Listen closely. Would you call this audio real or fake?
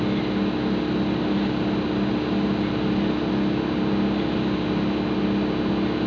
real